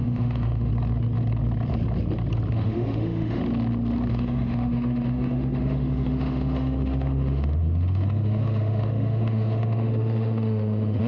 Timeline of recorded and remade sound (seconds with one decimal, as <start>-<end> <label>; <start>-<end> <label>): 0.0-0.7 remade; 0.7-2.5 recorded; 2.5-3.4 remade; 3.4-4.1 recorded; 4.1-11.1 remade